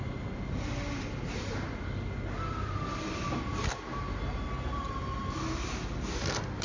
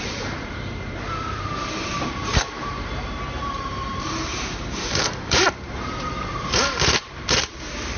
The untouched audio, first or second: first